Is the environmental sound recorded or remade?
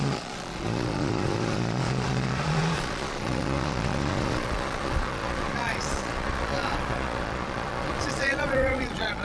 remade